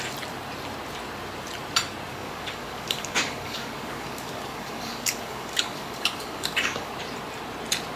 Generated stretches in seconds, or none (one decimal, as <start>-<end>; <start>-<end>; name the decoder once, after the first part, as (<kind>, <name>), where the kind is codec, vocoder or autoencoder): 2.1-6.9 (codec, DAC)